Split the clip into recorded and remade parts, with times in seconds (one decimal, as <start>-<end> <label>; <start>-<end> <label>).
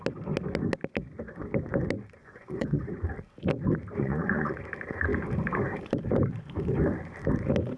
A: 0.0-2.2 recorded; 2.2-2.9 remade; 2.9-4.0 recorded; 4.0-4.6 remade; 4.6-7.8 recorded